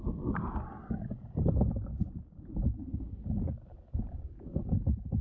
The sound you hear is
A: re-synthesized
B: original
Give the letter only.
B